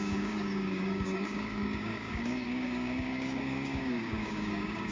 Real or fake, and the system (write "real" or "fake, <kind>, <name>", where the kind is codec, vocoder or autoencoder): fake, codec, DAC